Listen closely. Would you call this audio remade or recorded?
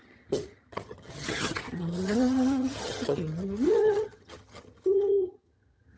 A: remade